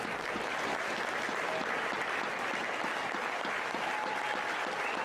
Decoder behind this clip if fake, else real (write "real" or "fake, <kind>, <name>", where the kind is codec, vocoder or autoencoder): real